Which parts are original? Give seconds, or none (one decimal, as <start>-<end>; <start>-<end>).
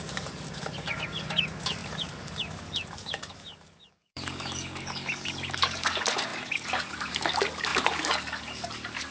none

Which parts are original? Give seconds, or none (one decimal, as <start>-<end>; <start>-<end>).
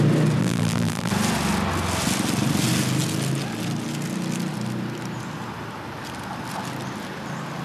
0.0-0.4; 1.1-7.6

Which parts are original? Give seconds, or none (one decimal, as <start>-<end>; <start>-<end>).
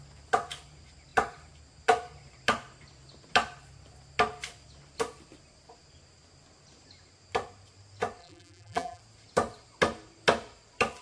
0.0-8.2; 9.0-11.0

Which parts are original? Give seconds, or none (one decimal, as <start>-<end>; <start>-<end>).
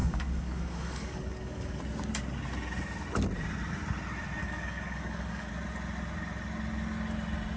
1.8-4.4; 5.5-7.6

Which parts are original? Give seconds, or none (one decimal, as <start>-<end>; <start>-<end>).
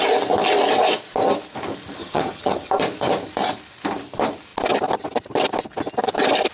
0.0-2.0; 2.7-6.5